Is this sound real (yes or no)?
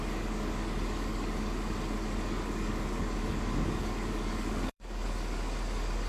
no